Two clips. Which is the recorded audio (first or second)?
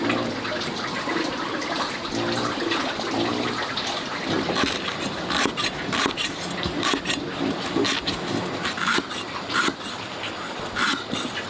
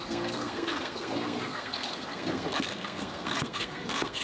first